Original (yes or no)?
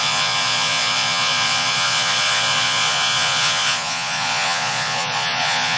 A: no